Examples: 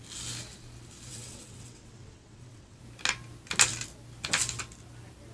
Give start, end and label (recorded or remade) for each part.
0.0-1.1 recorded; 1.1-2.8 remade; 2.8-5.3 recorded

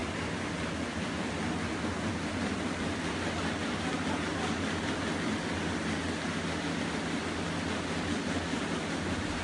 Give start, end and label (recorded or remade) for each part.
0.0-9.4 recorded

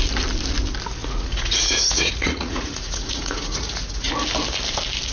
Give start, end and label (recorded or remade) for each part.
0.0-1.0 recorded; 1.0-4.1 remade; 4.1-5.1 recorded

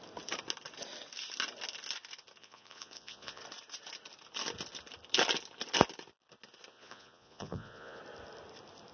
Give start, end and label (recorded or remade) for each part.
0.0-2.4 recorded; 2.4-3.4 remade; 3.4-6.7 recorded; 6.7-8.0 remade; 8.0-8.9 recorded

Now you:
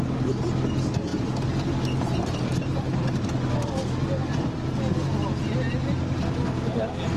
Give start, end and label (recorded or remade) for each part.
0.0-7.2 recorded

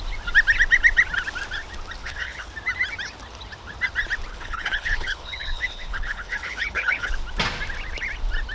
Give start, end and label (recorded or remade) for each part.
0.0-2.0 recorded; 2.0-2.5 remade; 2.5-4.3 recorded; 4.3-7.1 remade; 7.1-8.5 recorded

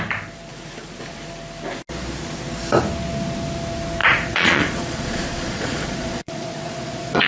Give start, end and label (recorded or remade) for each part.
0.0-4.0 recorded; 4.0-7.3 remade

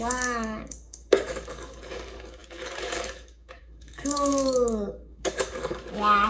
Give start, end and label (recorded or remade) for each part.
0.0-6.3 remade